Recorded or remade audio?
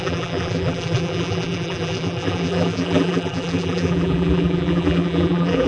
remade